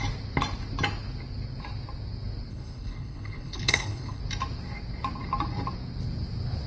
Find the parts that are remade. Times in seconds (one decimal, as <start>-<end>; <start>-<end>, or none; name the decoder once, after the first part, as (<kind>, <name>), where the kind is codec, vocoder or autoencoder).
2.5-4.2 (codec, HILCodec)